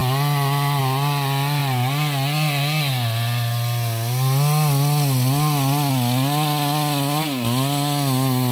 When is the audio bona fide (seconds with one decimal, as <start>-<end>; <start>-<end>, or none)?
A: 0.0-8.5